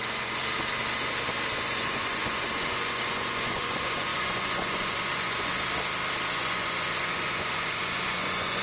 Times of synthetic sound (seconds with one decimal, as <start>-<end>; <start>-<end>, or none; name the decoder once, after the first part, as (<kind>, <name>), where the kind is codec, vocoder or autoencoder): 0.0-0.4 (vocoder, Vocos); 1.5-5.5; 6.3-8.6